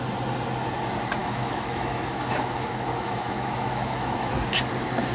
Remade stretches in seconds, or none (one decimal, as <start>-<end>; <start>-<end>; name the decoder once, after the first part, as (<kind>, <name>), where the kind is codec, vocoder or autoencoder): 1.2-4.3 (autoencoder, DAC-VAE)